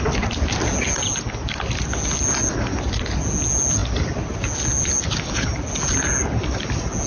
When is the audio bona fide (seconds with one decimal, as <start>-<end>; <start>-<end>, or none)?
0.0-7.1